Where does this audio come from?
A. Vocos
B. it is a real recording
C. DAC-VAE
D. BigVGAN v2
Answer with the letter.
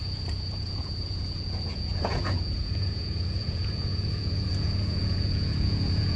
A